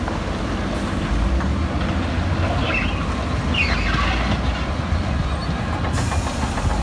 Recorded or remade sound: recorded